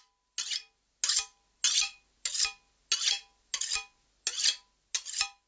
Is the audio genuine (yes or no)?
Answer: yes